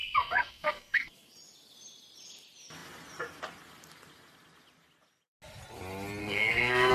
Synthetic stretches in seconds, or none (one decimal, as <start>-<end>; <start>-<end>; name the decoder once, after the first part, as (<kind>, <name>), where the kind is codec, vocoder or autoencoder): 0.0-1.3 (codec, SNAC); 6.2-6.9